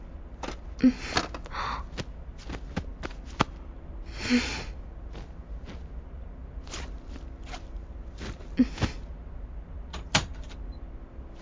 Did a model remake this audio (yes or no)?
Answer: no